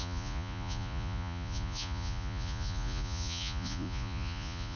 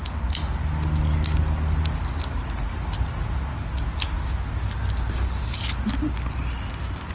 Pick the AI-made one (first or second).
first